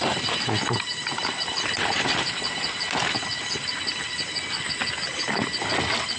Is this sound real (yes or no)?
yes